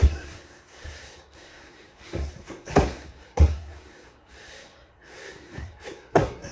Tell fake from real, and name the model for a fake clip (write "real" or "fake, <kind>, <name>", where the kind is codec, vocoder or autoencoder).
fake, codec, SNAC